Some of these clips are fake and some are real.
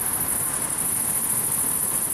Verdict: real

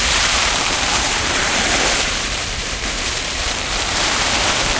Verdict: fake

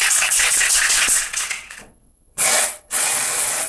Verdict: fake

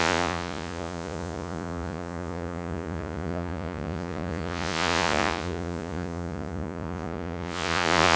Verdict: fake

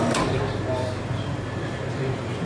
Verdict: fake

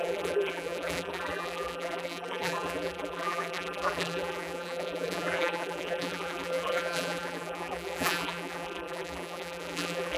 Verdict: fake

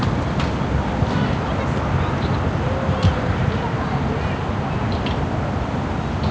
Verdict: real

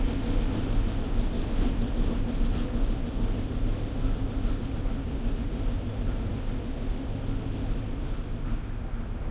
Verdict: real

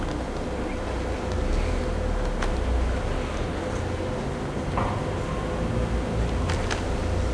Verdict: real